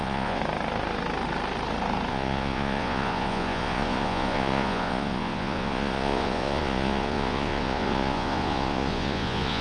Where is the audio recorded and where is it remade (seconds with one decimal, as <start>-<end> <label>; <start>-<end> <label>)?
0.0-0.4 remade; 0.4-2.1 recorded; 2.1-9.6 remade